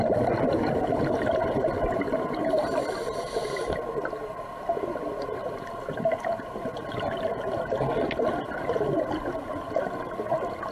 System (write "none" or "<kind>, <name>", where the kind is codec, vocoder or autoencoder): none